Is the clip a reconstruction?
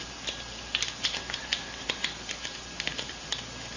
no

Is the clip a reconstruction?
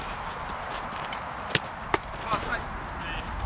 no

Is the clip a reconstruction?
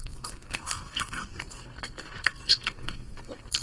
yes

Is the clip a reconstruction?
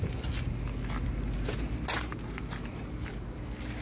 no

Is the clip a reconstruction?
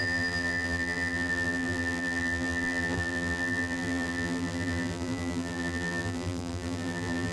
yes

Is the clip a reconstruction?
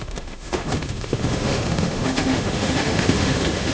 yes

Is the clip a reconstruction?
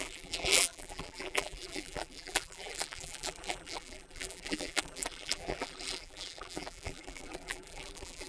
yes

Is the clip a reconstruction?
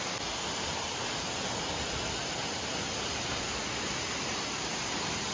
no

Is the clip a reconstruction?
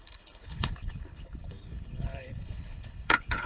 yes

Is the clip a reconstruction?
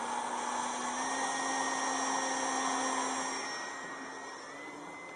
no